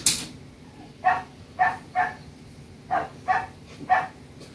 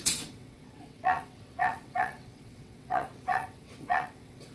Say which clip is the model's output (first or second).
second